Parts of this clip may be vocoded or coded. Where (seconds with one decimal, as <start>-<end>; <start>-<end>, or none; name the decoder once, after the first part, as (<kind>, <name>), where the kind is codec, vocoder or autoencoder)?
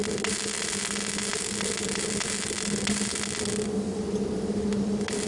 none